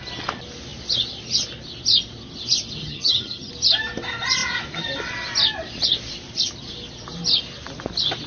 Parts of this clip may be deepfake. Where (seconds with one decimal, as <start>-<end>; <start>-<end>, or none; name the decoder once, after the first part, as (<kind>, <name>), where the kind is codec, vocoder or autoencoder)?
2.8-3.5 (vocoder, HiFi-GAN)